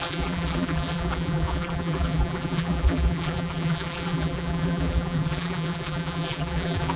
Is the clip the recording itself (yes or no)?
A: no